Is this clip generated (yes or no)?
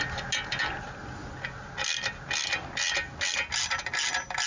no